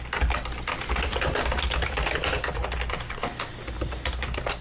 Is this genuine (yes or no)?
yes